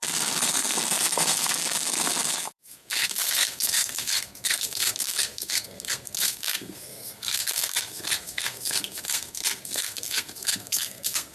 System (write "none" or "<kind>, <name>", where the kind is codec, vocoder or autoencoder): codec, SNAC